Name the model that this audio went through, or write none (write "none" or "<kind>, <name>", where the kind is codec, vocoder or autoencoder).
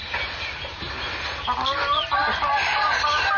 none